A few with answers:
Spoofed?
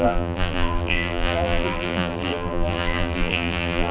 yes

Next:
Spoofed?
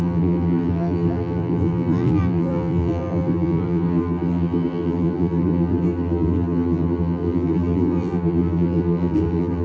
yes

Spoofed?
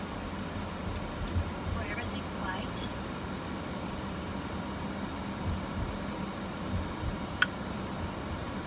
no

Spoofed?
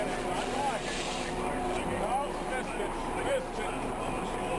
yes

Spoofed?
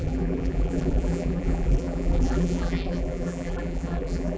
yes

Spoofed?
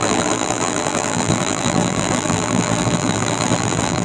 yes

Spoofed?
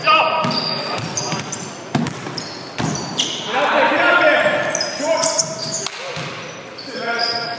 no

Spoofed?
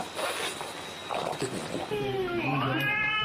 no